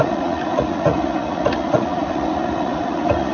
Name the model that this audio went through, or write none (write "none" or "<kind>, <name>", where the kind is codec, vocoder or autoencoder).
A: vocoder, Vocos